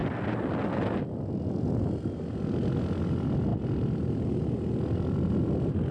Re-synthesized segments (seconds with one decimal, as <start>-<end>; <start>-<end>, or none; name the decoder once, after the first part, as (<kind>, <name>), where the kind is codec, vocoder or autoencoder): none